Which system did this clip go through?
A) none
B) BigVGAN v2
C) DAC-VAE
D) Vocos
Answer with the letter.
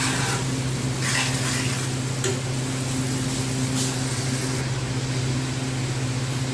A